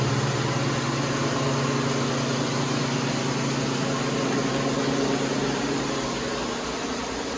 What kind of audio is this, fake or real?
real